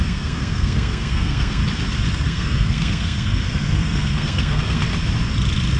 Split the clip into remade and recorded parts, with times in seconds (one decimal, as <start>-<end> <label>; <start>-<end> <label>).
0.0-1.6 remade; 1.6-2.1 recorded; 2.1-4.8 remade; 4.8-5.8 recorded